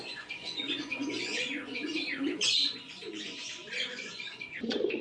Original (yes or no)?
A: no